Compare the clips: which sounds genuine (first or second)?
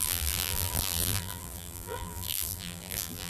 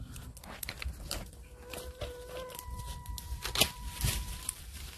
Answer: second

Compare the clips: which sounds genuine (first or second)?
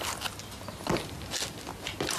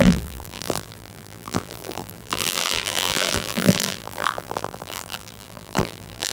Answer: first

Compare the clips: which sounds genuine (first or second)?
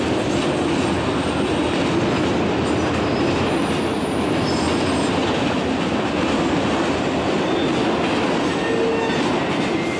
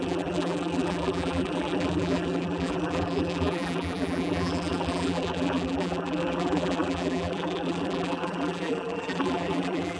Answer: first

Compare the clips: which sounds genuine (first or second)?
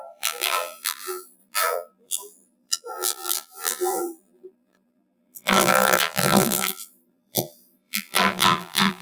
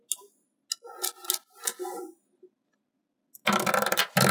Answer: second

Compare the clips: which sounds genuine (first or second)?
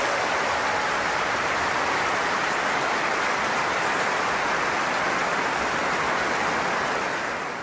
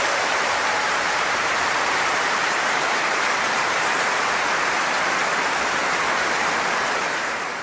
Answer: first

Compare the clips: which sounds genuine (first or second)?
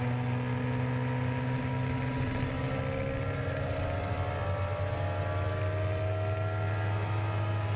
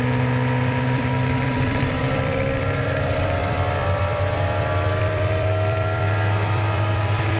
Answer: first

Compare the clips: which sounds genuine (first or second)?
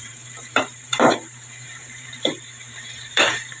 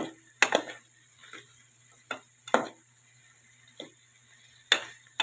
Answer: second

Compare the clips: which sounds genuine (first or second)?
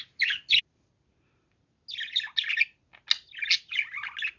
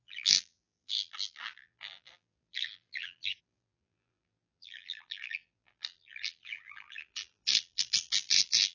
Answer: first